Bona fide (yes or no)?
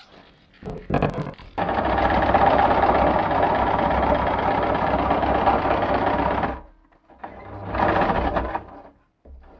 yes